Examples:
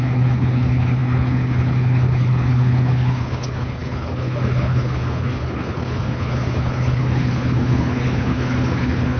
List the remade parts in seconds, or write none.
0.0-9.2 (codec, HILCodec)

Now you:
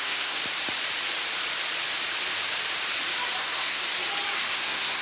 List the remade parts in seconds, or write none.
0.0-0.4 (codec, SNAC); 3.4-3.8; 4.5-5.0

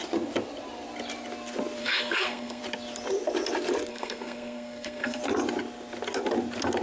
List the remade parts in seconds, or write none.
1.8-2.6 (codec, SNAC); 3.9-5.2